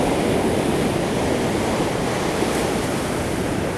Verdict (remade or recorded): recorded